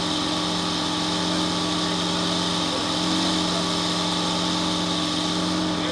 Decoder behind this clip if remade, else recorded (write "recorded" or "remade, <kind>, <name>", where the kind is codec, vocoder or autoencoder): recorded